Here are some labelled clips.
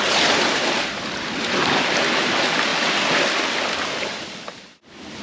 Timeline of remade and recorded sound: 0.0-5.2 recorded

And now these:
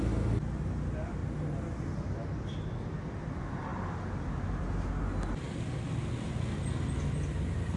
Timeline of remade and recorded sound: 0.0-7.8 recorded

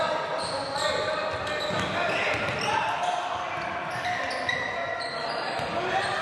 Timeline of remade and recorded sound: 0.0-6.2 recorded

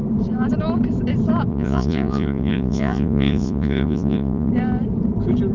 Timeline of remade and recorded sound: 0.0-1.5 recorded; 1.5-4.5 remade; 4.5-5.5 recorded

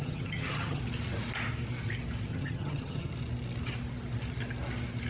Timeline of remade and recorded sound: 0.0-0.8 remade; 0.8-2.3 recorded; 2.3-3.1 remade; 3.1-5.1 recorded

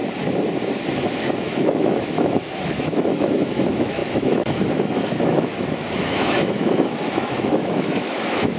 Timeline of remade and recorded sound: 0.0-1.2 recorded; 1.2-8.6 remade

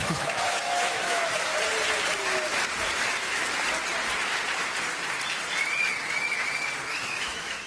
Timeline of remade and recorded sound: 0.0-1.5 remade; 1.5-3.0 recorded; 3.0-3.4 remade; 3.4-6.9 recorded; 6.9-7.7 remade